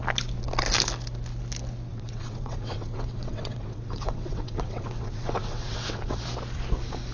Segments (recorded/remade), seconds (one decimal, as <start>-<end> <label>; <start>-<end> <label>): 0.0-1.9 recorded; 1.9-6.2 remade; 6.2-7.1 recorded